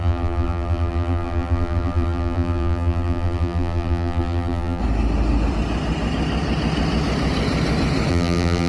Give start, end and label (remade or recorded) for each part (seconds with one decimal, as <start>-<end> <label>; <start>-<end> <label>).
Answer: 0.0-4.8 remade; 4.8-8.1 recorded; 8.1-8.7 remade